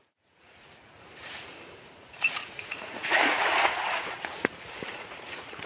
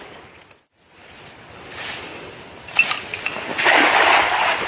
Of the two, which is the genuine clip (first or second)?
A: second